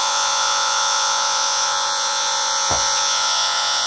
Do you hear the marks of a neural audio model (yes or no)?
yes